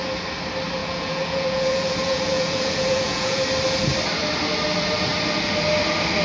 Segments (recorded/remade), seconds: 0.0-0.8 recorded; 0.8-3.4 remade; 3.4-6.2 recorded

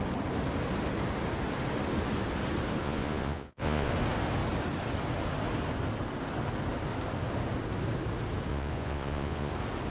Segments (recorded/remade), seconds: 0.0-2.8 recorded; 2.8-3.9 remade; 3.9-8.5 recorded; 8.5-9.5 remade; 9.5-9.9 recorded

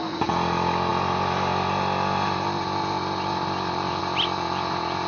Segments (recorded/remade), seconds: 0.0-5.1 recorded

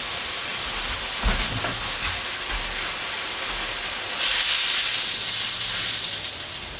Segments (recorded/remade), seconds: 0.0-6.8 recorded

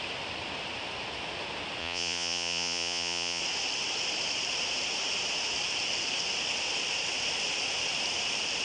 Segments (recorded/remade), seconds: 0.0-1.8 recorded; 1.8-3.4 remade; 3.4-8.6 recorded

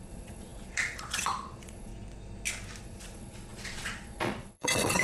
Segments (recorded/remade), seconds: 0.0-1.9 remade; 1.9-2.8 recorded; 2.8-5.0 remade